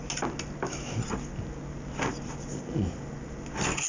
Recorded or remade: recorded